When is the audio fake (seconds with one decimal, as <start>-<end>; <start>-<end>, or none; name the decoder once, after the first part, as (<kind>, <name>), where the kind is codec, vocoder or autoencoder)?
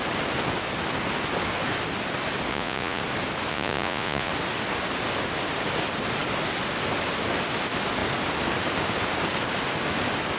2.5-3.0 (vocoder, Vocos); 3.5-4.3